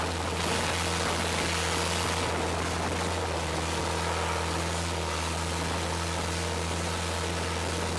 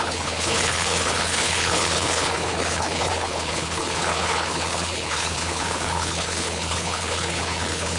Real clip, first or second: first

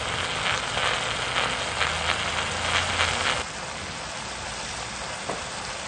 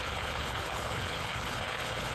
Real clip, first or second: first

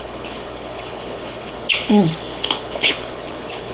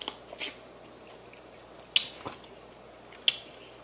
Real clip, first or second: second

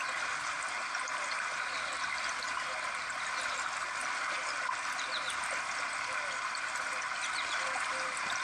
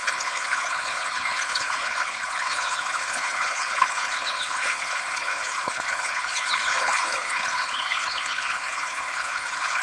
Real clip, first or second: first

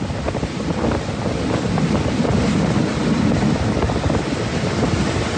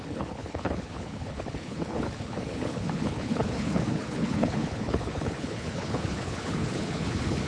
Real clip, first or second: first